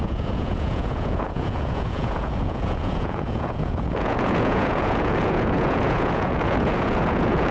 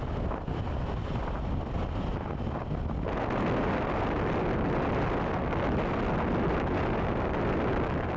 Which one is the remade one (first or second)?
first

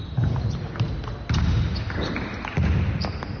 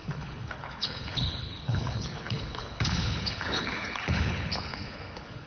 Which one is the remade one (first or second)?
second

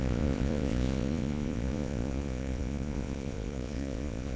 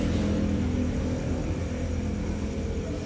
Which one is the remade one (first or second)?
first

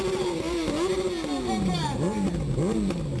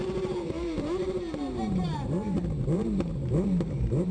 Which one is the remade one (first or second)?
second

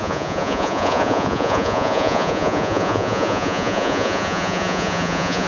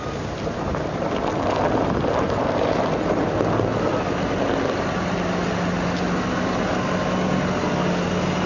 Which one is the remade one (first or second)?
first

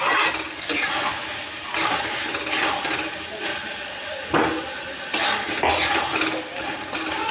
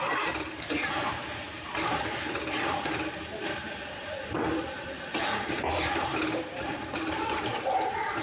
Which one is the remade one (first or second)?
second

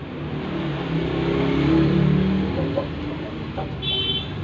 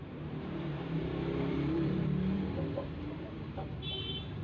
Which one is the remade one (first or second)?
second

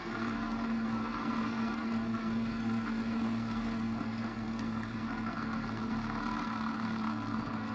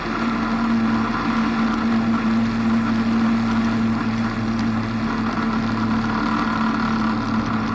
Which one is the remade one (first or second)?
first